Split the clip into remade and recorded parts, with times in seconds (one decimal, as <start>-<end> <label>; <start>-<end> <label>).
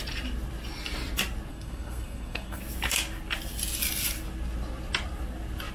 0.0-1.5 recorded; 1.5-2.6 remade; 2.6-5.7 recorded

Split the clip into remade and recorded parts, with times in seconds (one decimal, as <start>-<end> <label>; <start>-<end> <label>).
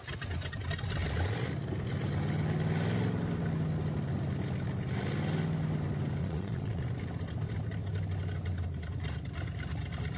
0.0-6.2 recorded; 6.2-6.8 remade; 6.8-10.2 recorded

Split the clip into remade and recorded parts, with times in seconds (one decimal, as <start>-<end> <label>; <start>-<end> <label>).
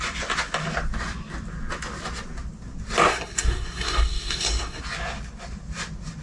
0.0-3.1 recorded; 3.1-4.8 remade; 4.8-6.2 recorded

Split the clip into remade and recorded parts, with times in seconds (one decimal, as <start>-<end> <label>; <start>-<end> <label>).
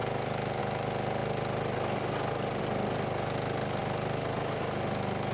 0.0-5.3 recorded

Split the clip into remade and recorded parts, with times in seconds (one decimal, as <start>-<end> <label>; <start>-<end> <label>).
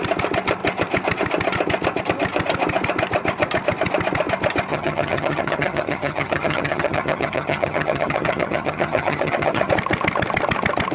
0.0-4.7 recorded; 4.7-9.7 remade; 9.7-10.9 recorded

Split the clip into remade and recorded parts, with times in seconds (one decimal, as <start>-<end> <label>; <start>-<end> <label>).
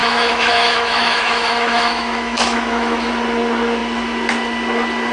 0.0-3.1 remade; 3.1-5.1 recorded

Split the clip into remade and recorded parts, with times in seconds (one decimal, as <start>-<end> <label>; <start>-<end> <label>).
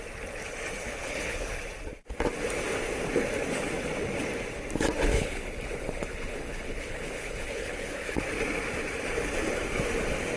0.0-0.8 recorded; 0.8-1.5 remade; 1.5-5.1 recorded; 5.1-8.2 remade; 8.2-10.4 recorded